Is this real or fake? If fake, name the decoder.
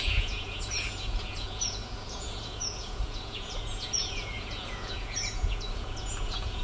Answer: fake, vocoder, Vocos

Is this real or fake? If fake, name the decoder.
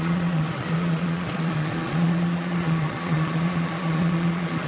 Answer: fake, vocoder, Vocos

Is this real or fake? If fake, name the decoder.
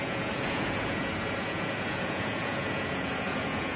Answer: fake, vocoder, Vocos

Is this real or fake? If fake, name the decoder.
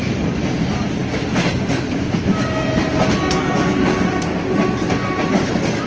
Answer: real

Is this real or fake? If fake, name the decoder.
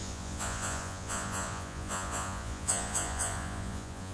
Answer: fake, vocoder, Vocos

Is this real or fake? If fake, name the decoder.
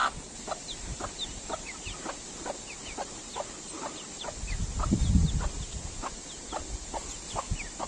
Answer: real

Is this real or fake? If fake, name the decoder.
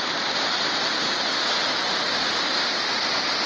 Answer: real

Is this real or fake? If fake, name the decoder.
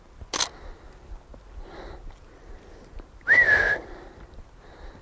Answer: real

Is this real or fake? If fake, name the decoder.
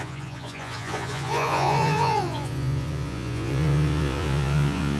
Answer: fake, vocoder, Vocos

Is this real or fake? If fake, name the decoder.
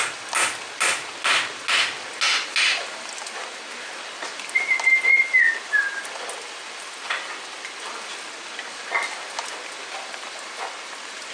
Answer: real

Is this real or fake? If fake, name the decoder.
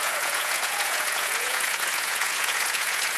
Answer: fake, vocoder, Vocos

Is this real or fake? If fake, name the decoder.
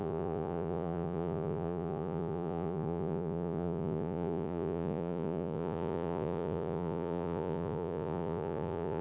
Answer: fake, vocoder, Vocos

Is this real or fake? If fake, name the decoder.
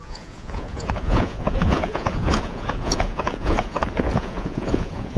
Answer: fake, vocoder, Vocos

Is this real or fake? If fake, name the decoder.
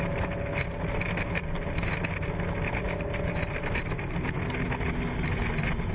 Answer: real